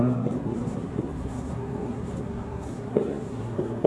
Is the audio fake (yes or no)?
yes